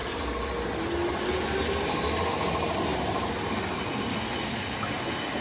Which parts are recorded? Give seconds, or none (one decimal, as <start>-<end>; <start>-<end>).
0.0-2.9; 3.5-5.4